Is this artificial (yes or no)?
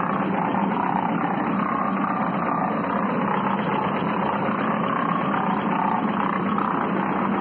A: no